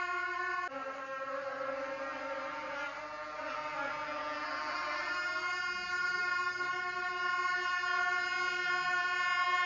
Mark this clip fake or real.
real